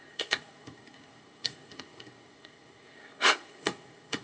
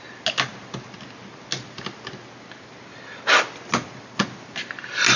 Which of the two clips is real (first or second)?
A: second